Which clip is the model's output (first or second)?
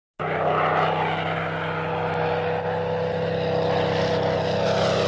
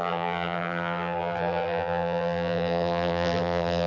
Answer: second